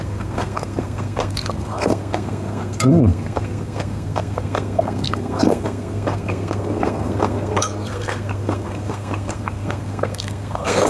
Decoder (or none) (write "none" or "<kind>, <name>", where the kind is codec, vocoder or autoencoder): codec, SNAC